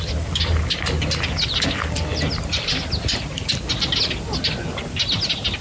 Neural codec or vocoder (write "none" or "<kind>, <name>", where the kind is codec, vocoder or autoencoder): none